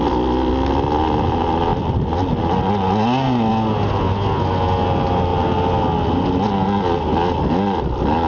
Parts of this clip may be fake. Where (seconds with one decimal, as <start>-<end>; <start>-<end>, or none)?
none